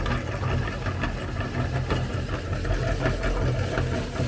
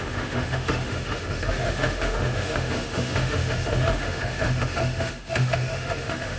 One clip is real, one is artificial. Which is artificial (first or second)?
second